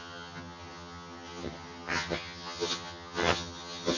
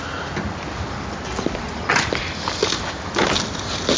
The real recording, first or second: second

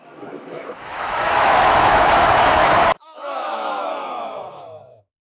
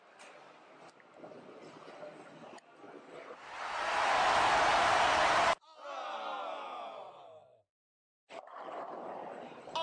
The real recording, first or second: second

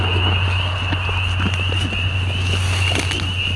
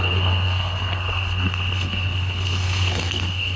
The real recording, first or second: first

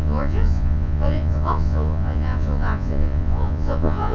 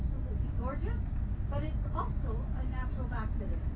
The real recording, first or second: second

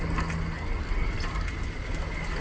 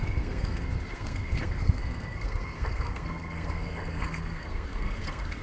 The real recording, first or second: first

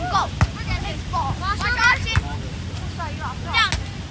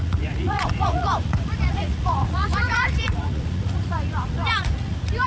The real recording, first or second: first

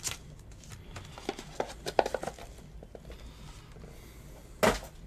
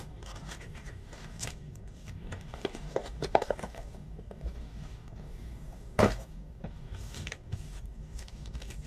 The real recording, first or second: first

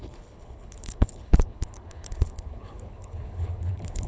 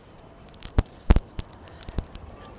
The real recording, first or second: second